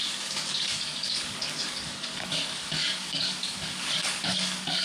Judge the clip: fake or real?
fake